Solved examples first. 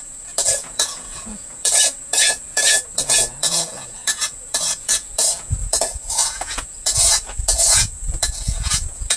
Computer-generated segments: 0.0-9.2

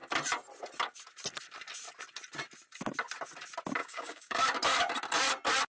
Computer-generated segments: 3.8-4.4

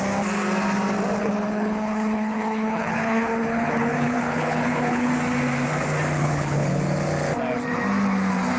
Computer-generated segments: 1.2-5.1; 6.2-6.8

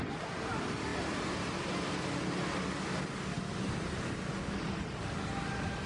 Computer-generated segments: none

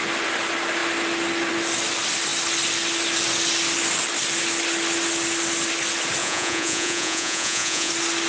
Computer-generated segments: 6.2-7.9

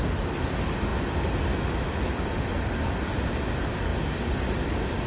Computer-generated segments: none

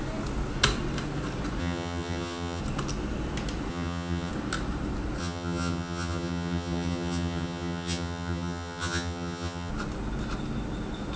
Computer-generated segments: 1.6-2.6; 3.7-4.3; 5.2-9.7

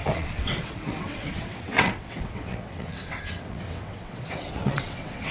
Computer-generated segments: 0.0-5.3